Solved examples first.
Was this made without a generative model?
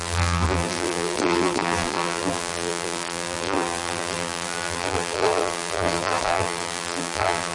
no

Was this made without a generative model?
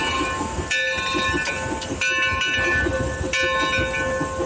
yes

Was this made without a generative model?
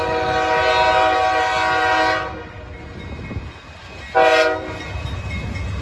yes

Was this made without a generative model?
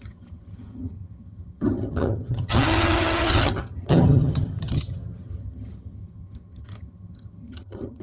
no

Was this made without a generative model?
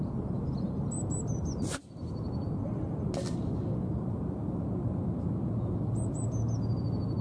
yes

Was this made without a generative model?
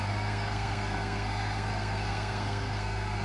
no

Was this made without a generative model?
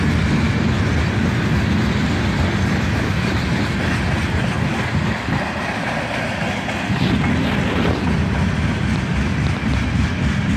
yes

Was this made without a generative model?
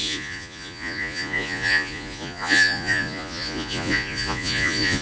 no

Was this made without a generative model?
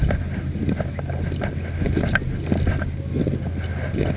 yes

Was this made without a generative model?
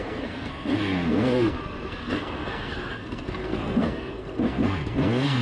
no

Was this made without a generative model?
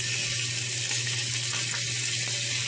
yes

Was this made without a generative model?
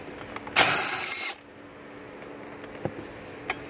yes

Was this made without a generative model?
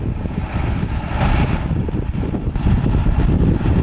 no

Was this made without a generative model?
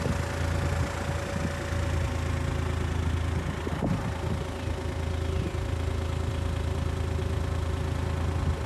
yes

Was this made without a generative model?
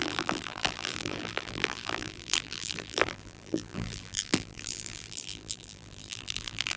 no